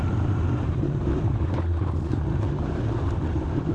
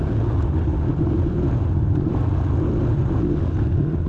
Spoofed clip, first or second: first